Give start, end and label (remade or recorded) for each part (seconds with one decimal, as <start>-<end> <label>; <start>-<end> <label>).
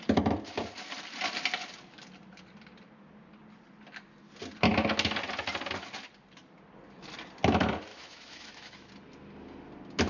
0.0-7.9 recorded; 7.9-8.9 remade; 8.9-10.1 recorded